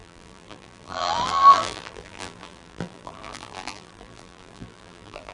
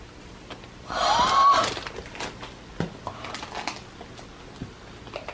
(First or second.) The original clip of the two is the second